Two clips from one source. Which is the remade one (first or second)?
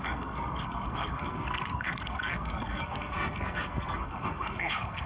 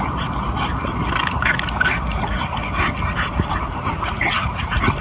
first